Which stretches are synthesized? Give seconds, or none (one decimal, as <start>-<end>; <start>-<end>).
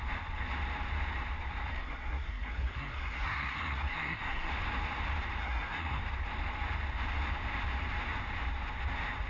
1.7-4.5; 5.4-6.0